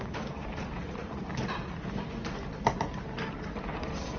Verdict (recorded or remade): remade